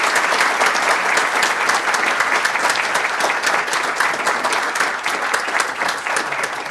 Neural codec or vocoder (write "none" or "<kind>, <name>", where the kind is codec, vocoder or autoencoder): none